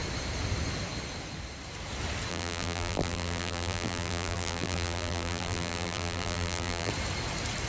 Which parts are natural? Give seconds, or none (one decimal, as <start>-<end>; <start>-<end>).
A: 0.0-2.3; 6.9-7.7